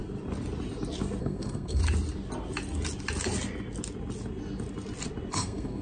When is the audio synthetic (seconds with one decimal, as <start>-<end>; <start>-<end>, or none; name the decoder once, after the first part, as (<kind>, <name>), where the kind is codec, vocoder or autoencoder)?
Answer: 1.2-1.8 (codec, SNAC); 5.3-5.8